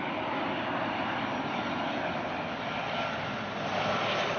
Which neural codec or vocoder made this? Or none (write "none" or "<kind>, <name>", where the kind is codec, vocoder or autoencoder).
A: none